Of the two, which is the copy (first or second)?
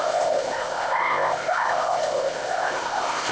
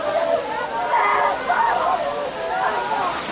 first